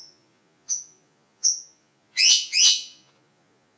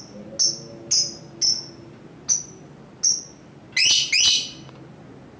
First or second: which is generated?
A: first